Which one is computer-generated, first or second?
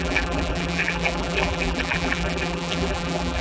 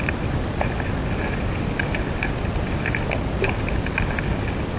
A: first